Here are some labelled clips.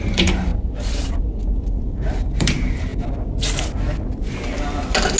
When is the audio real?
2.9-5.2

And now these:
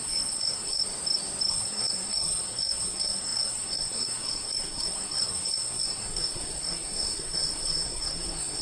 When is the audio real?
0.8-1.5